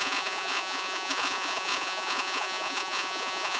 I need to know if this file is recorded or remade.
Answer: remade